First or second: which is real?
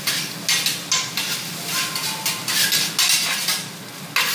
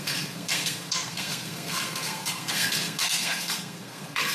first